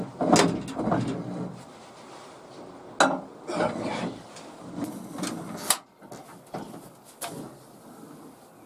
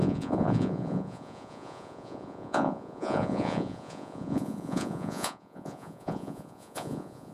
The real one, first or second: first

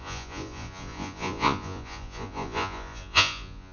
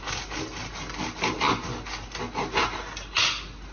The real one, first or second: second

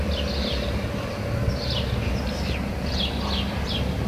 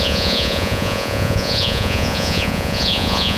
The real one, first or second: first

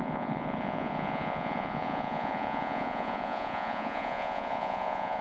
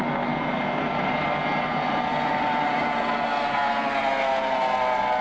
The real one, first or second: second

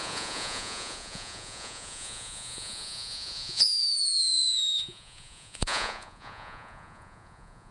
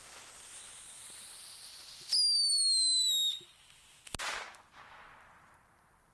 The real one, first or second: second